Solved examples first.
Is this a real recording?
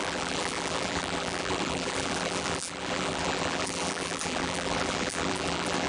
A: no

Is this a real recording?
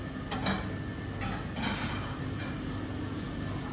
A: yes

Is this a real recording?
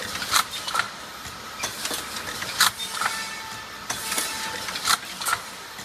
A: no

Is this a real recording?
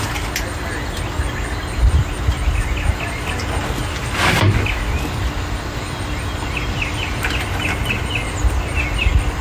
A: yes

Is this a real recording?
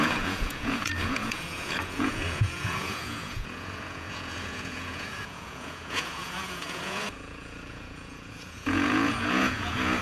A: no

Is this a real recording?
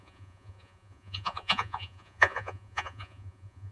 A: no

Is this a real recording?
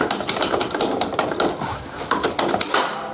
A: yes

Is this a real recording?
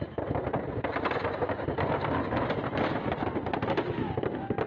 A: yes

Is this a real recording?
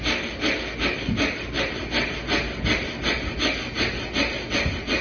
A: yes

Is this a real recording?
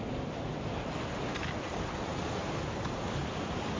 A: yes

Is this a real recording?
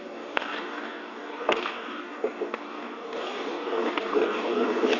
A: no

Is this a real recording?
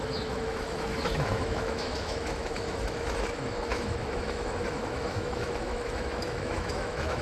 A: no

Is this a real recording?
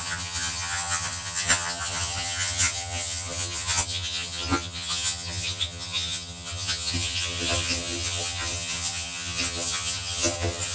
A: no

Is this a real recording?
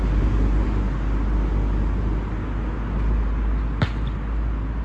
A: yes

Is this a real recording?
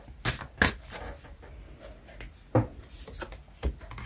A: yes